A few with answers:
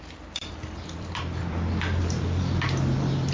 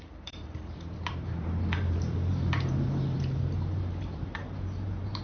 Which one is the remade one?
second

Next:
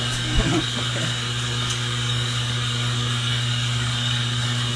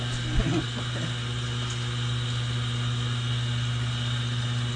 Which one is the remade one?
first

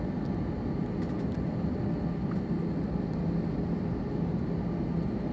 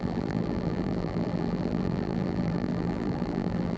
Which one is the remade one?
second